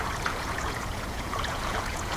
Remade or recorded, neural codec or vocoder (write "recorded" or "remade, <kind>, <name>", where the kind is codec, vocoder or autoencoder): remade, vocoder, Vocos